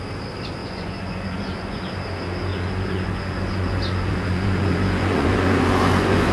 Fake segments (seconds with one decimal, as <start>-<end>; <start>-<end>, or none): 0.6-1.8; 2.5-6.3